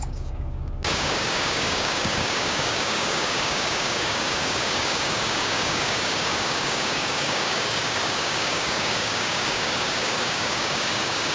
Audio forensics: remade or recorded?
remade